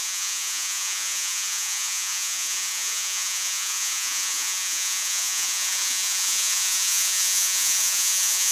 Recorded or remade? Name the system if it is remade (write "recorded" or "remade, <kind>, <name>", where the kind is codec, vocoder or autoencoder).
remade, vocoder, Vocos